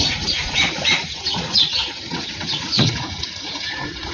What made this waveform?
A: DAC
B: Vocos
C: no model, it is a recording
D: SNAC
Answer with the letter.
B